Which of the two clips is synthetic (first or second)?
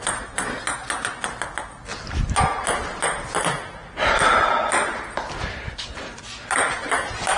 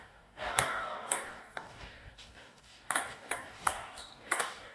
second